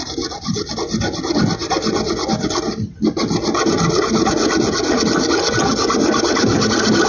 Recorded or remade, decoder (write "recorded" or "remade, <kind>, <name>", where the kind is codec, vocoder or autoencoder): recorded